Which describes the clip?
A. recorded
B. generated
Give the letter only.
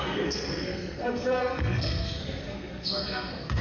B